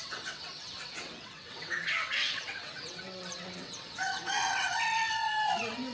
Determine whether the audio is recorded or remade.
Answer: remade